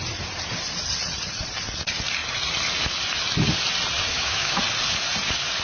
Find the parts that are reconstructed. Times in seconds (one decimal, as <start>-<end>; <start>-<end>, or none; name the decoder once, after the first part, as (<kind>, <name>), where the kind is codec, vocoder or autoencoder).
4.1-4.6 (autoencoder, DAC-VAE)